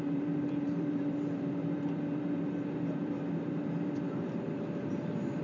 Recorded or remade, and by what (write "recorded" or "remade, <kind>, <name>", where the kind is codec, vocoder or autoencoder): remade, vocoder, BigVGAN v2